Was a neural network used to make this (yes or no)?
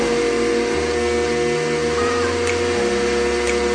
no